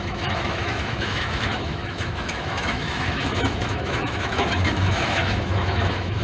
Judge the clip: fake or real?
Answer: fake